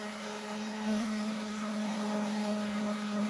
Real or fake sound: fake